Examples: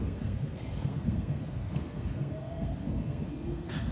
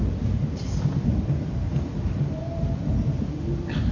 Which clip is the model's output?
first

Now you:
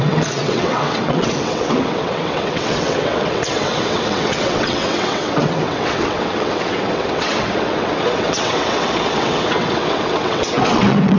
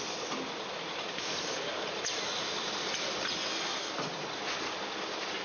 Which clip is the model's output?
first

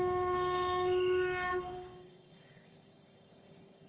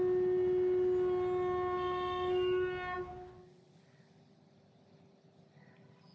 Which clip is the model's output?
first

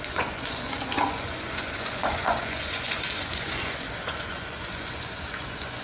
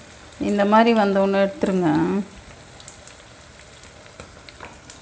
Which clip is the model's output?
first